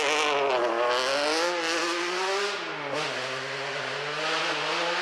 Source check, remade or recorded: recorded